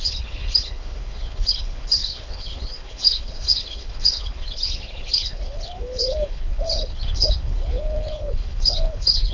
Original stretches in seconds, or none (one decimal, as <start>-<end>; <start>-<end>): none

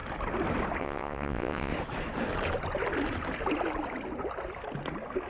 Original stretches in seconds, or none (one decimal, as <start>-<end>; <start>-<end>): 0.0-0.8; 1.7-5.3

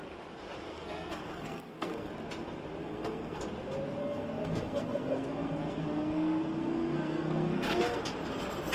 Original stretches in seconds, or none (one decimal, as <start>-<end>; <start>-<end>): 0.0-0.7; 2.1-2.8; 3.4-4.0; 8.0-8.7

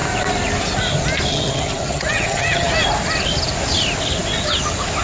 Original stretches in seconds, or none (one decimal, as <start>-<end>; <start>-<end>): 0.0-1.3; 2.7-5.0

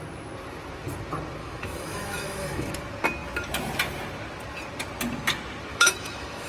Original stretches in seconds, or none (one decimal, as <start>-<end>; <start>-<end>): 0.0-1.4; 2.7-5.7

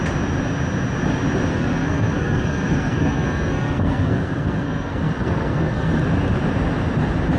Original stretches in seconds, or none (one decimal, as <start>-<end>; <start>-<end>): 0.0-1.5; 5.9-7.4